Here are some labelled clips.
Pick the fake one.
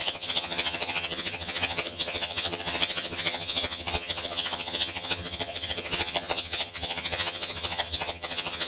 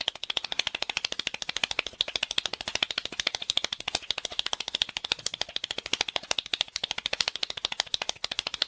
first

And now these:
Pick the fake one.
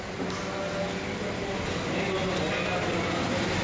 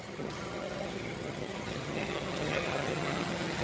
second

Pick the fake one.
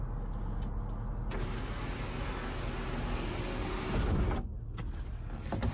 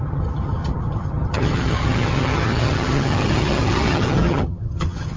second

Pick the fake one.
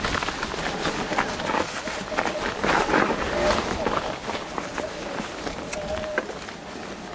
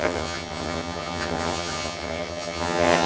second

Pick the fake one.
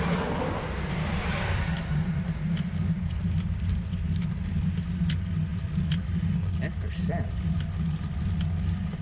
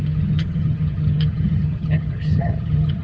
second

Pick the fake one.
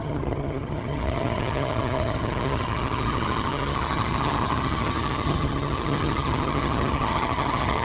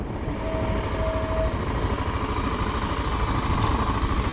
first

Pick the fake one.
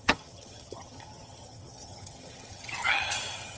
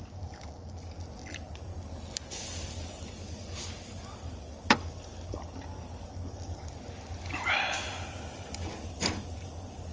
first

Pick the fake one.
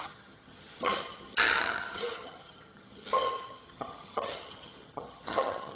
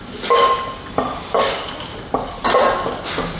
first